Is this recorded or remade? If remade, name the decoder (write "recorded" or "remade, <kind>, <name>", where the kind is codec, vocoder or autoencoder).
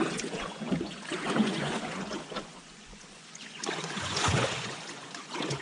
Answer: remade, vocoder, Vocos